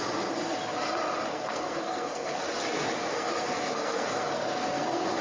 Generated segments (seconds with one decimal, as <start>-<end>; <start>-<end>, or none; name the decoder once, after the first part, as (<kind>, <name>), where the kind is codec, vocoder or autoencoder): 1.3-2.4 (codec, SNAC); 3.1-5.2